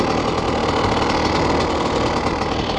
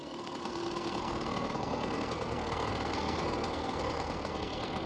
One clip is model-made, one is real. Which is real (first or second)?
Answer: first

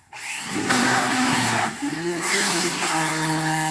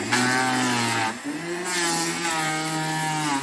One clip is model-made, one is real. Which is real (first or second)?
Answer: second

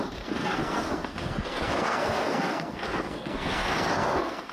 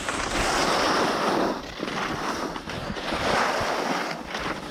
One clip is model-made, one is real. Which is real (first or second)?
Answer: second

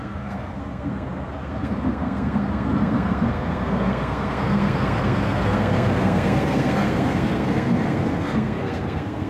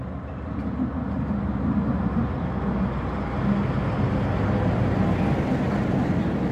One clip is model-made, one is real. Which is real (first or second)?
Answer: second